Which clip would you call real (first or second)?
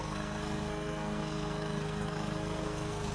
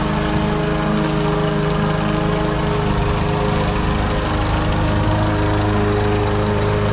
second